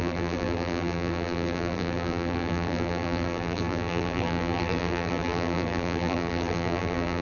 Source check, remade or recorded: remade